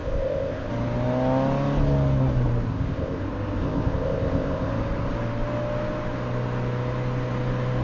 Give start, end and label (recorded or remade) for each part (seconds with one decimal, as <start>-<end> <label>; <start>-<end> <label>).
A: 0.0-0.7 remade; 0.7-2.7 recorded; 2.7-3.2 remade; 3.2-3.6 recorded; 3.6-4.7 remade; 4.7-7.8 recorded